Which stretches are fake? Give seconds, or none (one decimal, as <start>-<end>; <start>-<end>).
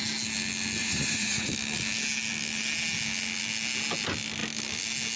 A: 0.8-1.5